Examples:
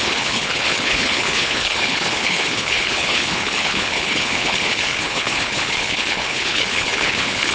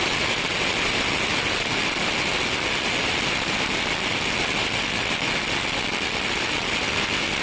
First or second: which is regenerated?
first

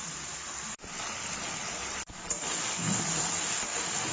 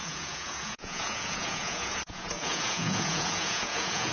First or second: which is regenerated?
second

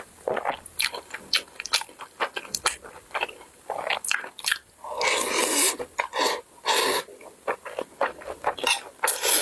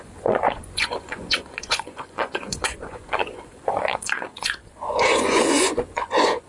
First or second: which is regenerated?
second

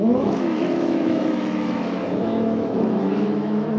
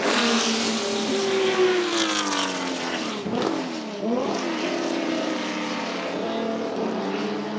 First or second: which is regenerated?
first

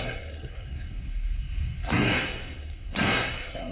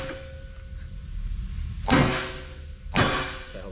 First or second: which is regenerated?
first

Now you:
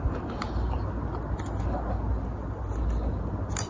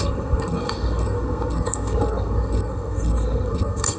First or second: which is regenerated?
second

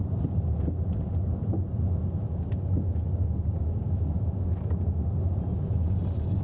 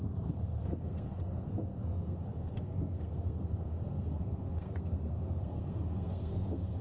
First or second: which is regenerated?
second